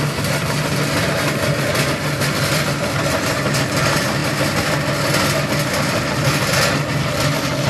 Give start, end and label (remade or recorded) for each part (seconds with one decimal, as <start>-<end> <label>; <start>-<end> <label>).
0.0-4.2 remade; 4.2-5.7 recorded; 5.7-7.7 remade

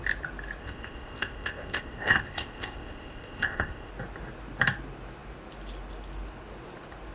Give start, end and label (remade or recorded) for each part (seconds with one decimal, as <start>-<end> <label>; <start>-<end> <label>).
0.0-0.6 recorded; 0.6-3.9 remade; 3.9-7.1 recorded

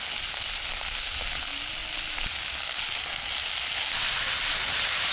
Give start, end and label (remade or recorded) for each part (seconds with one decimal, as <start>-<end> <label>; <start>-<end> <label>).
0.0-5.1 recorded

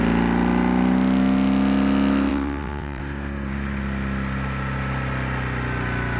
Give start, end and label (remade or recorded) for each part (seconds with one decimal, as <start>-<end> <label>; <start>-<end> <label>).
0.0-2.3 recorded; 2.3-3.0 remade; 3.0-6.2 recorded

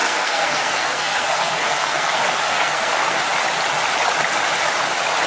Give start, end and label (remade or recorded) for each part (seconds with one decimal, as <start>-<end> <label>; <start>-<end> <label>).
0.0-3.2 remade; 3.2-5.3 recorded